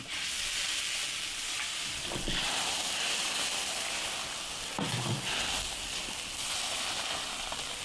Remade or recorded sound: recorded